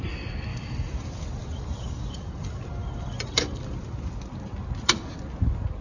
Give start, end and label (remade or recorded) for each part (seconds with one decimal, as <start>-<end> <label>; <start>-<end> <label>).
0.0-0.5 recorded; 0.5-4.0 remade; 4.0-5.8 recorded